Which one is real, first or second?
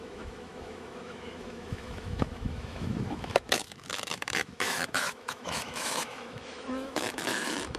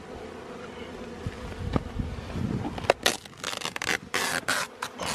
second